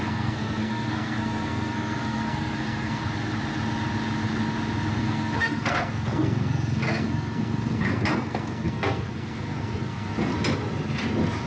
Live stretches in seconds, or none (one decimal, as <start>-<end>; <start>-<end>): 3.0-5.0; 10.3-11.5